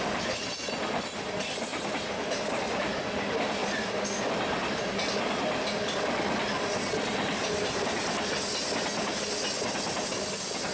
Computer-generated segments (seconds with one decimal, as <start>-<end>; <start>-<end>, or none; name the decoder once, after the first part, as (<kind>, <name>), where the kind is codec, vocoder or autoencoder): none